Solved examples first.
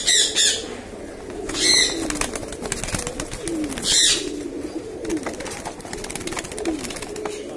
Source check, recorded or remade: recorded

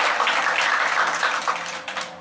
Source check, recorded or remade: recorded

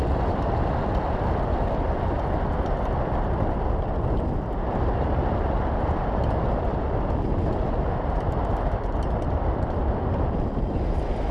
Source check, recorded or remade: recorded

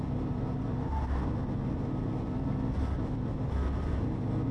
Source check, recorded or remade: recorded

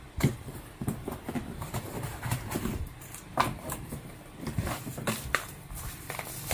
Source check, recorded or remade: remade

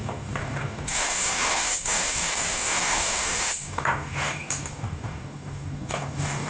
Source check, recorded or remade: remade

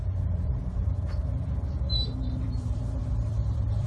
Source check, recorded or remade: remade